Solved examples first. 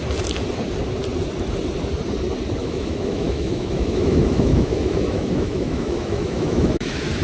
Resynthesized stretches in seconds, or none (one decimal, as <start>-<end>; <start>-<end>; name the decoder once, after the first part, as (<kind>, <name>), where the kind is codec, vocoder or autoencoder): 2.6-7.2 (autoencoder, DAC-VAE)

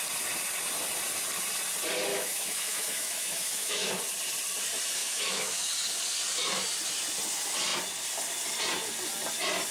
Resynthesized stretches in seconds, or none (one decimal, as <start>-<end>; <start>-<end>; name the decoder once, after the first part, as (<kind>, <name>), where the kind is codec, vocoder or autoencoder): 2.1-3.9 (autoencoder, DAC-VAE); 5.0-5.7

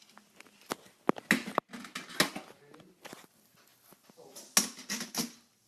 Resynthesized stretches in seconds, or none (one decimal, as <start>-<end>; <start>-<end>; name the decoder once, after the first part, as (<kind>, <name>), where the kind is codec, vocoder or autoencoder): none

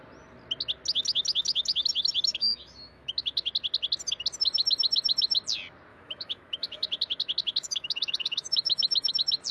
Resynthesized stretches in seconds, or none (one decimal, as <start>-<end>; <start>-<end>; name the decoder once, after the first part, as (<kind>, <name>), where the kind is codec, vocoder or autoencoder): 2.3-3.5 (autoencoder, DAC-VAE); 5.9-9.1

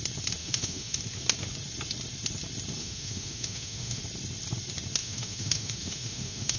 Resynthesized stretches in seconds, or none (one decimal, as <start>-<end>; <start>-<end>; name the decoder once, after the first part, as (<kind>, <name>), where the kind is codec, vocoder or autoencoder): 0.4-1.0 (autoencoder, DAC-VAE); 2.8-4.0; 5.0-6.6

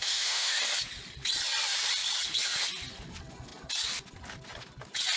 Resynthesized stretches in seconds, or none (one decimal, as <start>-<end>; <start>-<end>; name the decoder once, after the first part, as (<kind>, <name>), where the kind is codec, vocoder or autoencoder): 0.0-0.6 (autoencoder, DAC-VAE)

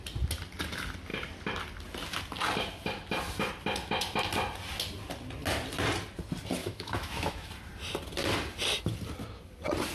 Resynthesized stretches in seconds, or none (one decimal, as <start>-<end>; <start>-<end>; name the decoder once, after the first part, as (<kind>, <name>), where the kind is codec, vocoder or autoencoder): 6.6-7.5 (autoencoder, DAC-VAE)